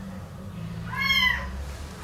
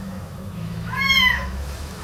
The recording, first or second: first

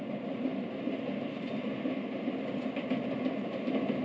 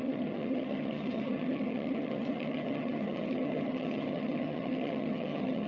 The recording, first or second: first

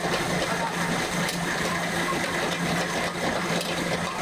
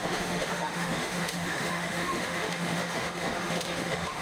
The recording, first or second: first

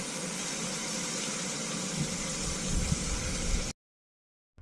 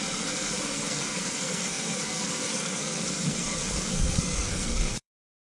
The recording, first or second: first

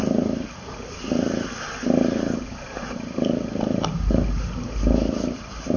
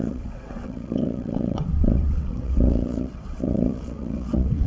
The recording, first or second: first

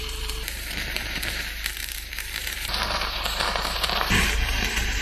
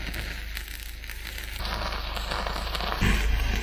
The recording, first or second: second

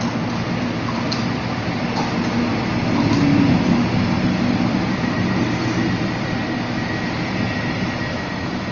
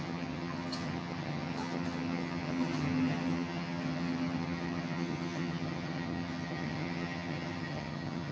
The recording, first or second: first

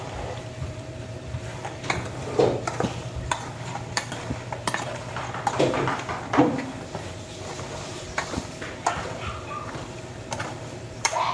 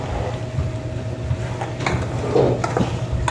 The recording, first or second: second